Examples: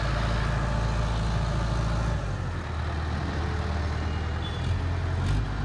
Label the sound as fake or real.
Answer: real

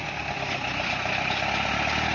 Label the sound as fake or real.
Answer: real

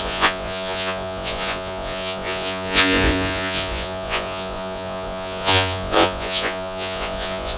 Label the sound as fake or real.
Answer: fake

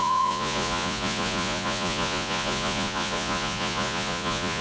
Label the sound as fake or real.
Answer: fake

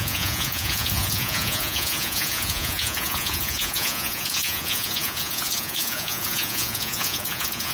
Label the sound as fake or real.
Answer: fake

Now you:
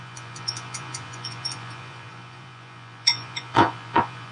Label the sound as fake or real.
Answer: fake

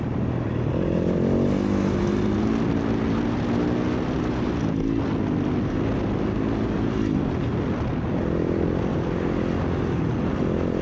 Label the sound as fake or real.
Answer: real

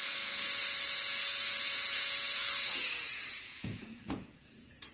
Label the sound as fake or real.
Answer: fake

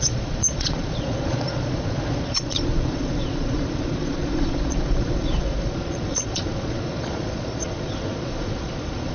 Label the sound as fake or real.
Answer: fake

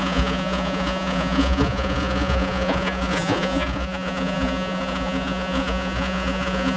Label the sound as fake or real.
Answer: fake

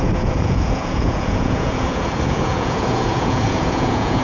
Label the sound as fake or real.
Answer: fake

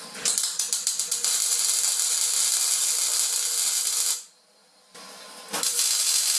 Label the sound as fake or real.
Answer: real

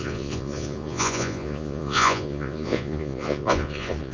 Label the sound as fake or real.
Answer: fake